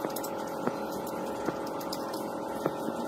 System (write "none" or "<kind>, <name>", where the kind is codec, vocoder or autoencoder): vocoder, Vocos